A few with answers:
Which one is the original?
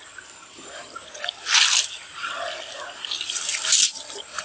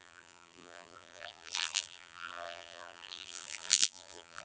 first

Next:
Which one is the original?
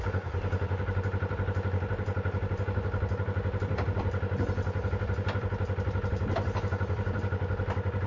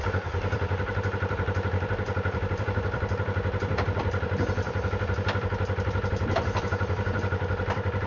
first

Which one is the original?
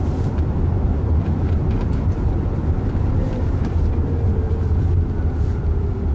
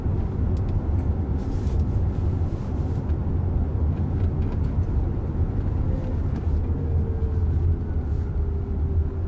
second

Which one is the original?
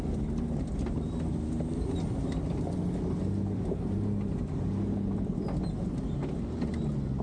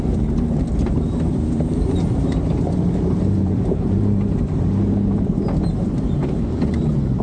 first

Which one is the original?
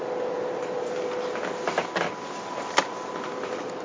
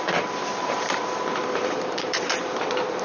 first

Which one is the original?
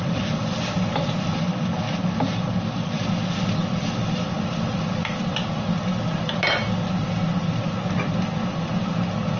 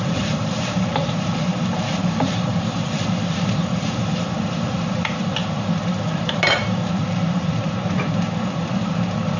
first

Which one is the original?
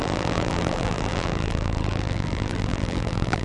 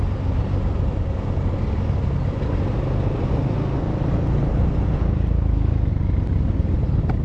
second